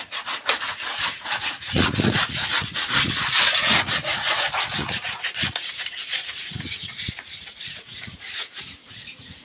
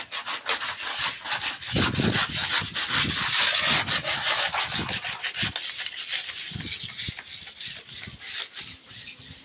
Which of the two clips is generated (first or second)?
first